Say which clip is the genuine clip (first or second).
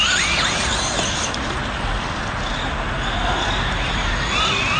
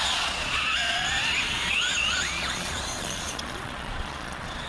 first